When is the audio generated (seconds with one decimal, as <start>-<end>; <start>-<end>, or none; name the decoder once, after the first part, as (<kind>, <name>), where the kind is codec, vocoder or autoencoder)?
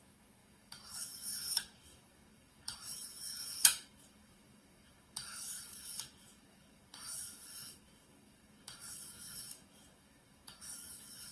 0.0-11.3 (autoencoder, DAC-VAE)